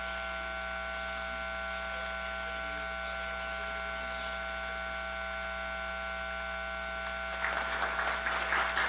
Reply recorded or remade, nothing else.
recorded